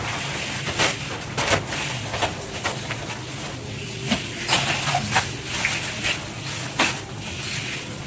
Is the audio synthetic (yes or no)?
no